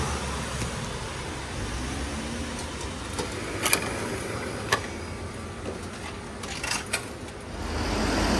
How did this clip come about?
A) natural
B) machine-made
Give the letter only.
A